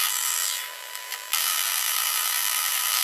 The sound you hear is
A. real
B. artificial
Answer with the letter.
B